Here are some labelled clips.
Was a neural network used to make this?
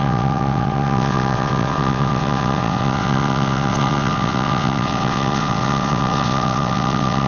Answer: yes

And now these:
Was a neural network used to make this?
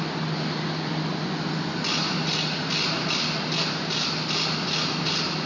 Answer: no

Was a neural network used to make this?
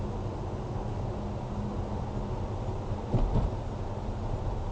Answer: no